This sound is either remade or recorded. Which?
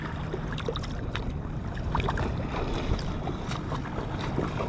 recorded